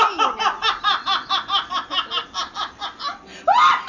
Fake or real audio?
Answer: real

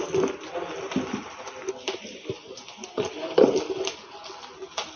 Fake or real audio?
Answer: fake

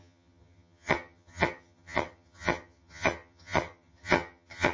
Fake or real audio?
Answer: fake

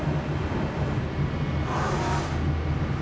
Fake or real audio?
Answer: real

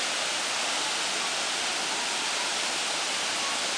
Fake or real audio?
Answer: real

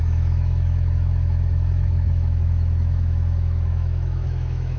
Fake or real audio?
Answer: fake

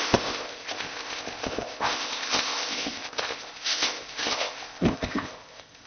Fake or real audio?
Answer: fake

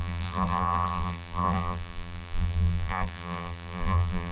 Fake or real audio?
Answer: fake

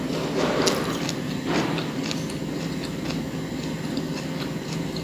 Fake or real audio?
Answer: real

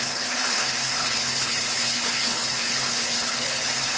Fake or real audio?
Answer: fake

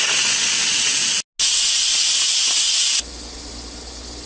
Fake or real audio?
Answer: real